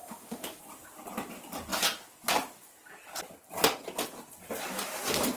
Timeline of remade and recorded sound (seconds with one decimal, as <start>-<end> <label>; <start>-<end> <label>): 0.0-0.6 remade; 0.6-5.4 recorded